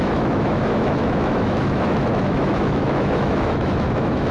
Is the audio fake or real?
fake